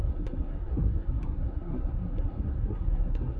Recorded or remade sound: remade